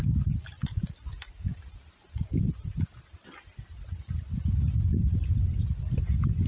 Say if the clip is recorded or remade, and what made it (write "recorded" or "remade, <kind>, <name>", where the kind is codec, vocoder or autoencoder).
recorded